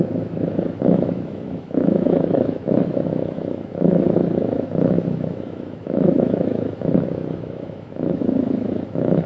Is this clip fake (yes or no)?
yes